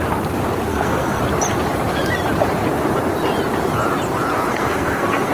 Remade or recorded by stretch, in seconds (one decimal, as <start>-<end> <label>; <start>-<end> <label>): 0.0-0.7 recorded; 0.7-1.2 remade; 1.2-4.5 recorded; 4.5-5.3 remade